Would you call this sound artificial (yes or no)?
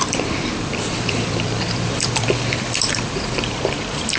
yes